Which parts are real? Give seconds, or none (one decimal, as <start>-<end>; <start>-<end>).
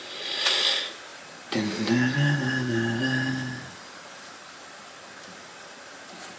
0.0-6.4